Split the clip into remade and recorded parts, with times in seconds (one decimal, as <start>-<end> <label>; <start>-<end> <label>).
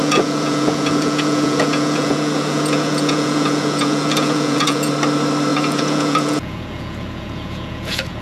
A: 0.0-4.9 remade; 4.9-5.5 recorded; 5.5-8.2 remade